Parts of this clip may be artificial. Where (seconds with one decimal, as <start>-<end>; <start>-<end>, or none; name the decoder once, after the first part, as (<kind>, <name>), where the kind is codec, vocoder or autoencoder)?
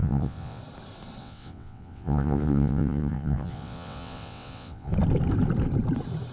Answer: 0.0-0.6 (vocoder, WaveNeXt); 1.2-4.9